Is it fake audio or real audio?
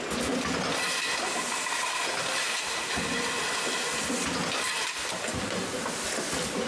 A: real